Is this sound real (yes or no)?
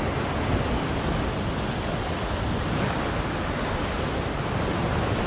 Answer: yes